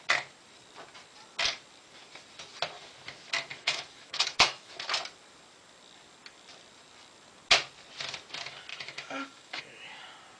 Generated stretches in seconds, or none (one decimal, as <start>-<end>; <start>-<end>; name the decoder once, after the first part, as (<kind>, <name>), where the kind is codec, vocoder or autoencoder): 3.5-4.7 (autoencoder, DAC-VAE); 8.7-9.6